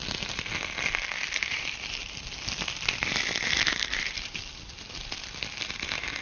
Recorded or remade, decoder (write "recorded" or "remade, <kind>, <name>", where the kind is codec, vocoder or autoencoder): remade, vocoder, BigVGAN v2